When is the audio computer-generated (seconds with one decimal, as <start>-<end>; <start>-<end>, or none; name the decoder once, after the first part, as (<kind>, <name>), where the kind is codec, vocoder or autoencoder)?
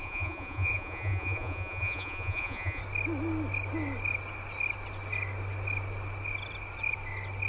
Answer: 0.0-2.8 (vocoder, Vocos)